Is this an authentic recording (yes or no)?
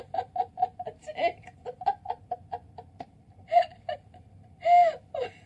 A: no